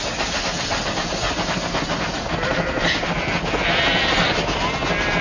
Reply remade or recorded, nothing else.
recorded